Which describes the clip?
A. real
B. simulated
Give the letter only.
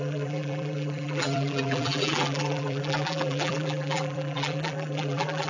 B